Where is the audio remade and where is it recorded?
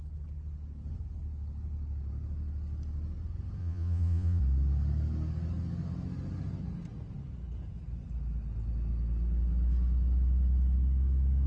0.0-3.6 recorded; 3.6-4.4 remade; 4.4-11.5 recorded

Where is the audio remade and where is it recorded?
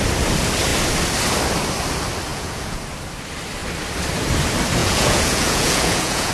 0.0-2.3 recorded; 2.3-2.8 remade; 2.8-4.8 recorded; 4.8-6.3 remade